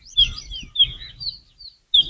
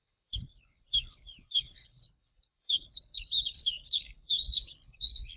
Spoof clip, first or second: second